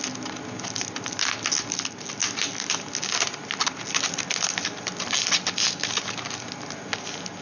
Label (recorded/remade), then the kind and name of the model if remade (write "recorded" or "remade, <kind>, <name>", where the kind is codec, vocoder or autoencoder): recorded